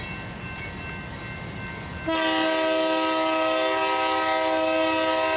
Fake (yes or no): no